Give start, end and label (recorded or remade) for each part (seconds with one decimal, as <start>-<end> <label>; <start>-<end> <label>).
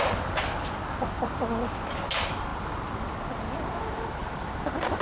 0.0-4.2 recorded; 4.2-5.0 remade